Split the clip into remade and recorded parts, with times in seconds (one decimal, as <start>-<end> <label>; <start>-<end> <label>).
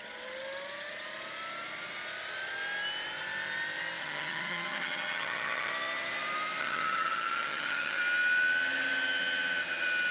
0.0-4.0 recorded; 4.0-5.7 remade; 5.7-6.6 recorded; 6.6-8.0 remade; 8.0-10.1 recorded